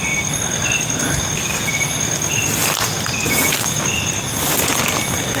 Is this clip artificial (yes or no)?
no